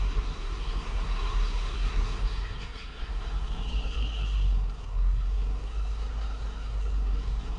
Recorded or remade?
remade